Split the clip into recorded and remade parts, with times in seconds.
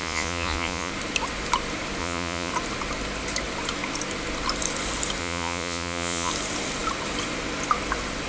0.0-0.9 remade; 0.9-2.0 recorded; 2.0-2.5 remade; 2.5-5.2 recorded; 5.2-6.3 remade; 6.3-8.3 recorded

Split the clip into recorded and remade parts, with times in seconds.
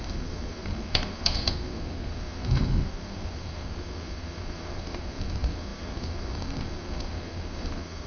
0.0-8.1 remade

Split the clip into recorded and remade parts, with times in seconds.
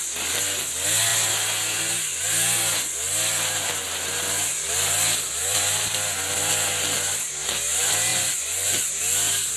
0.0-8.1 recorded; 8.1-8.9 remade; 8.9-9.6 recorded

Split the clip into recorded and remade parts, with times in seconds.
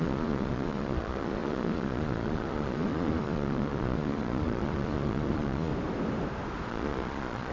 0.0-5.7 remade; 5.7-6.7 recorded; 6.7-7.5 remade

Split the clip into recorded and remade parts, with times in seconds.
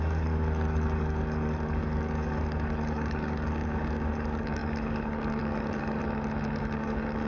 0.0-6.0 remade; 6.0-6.6 recorded; 6.6-7.3 remade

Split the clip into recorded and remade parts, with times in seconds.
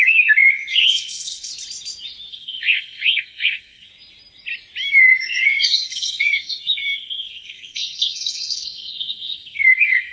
0.0-1.5 remade; 1.5-2.3 recorded; 2.3-3.9 remade; 3.9-4.9 recorded; 4.9-10.1 remade